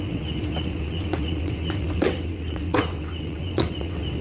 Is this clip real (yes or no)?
no